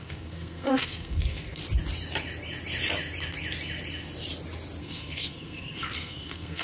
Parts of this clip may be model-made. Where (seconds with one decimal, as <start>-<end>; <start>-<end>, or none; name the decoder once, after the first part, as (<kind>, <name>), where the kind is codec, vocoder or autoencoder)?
0.0-1.6 (codec, SNAC); 4.8-6.6